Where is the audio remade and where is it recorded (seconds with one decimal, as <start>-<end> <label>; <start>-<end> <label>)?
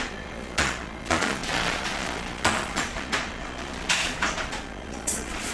0.0-5.5 remade